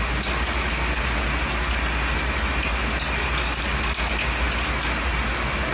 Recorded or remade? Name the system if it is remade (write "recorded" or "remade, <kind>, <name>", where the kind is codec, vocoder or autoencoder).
recorded